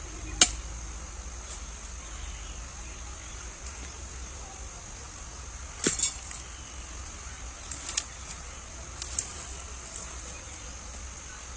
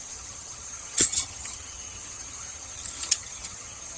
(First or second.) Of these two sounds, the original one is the first